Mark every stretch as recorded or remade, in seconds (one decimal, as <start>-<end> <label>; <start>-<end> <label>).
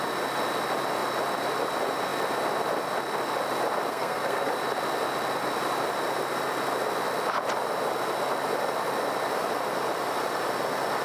0.0-3.9 recorded; 3.9-4.5 remade; 4.5-11.0 recorded